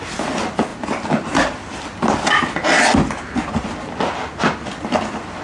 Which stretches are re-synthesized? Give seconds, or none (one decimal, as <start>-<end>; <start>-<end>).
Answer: none